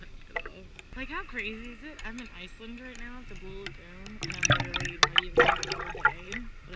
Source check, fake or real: real